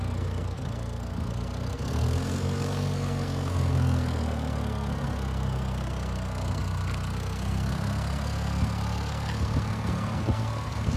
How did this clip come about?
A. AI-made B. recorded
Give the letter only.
A